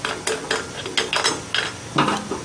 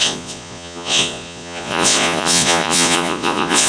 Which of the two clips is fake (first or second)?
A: second